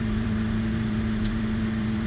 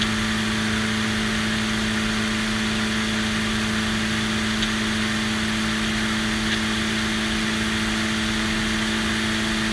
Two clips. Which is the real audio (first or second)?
second